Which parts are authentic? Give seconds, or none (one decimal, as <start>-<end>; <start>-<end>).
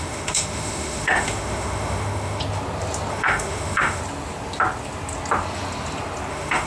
2.4-3.1; 4.0-6.3